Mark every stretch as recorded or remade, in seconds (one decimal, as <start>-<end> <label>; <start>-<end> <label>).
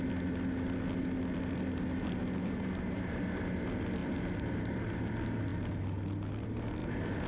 0.0-2.4 recorded; 2.4-3.2 remade; 3.2-4.0 recorded; 4.0-5.1 remade; 5.1-6.8 recorded; 6.8-7.3 remade